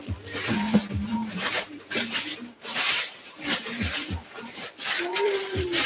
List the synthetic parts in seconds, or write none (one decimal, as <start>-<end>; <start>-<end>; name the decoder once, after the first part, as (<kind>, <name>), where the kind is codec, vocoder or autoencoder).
1.1-4.6 (vocoder, BigVGAN v2); 5.1-5.9